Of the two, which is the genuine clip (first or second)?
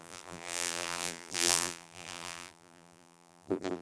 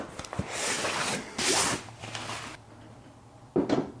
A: second